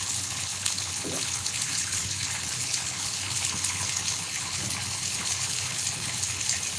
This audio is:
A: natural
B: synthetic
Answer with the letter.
B